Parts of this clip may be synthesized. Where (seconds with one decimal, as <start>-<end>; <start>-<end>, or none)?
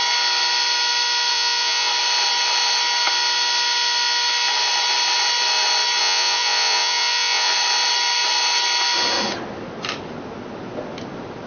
1.3-1.9; 6.0-7.5